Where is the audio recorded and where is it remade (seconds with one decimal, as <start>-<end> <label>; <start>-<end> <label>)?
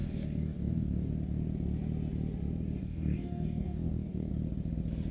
0.0-1.1 remade; 1.1-2.8 recorded; 2.8-4.3 remade; 4.3-5.1 recorded